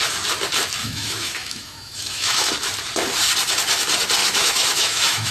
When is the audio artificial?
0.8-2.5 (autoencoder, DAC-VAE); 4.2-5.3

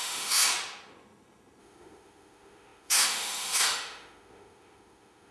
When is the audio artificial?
0.0-0.5 (autoencoder, DAC-VAE); 1.6-5.3

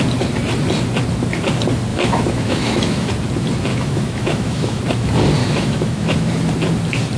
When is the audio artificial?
1.9-3.1 (autoencoder, DAC-VAE); 3.7-4.8; 5.4-6.3

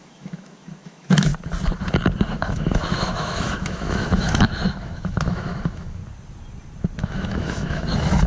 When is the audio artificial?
0.0-1.3 (autoencoder, DAC-VAE); 2.3-6.0; 7.0-8.3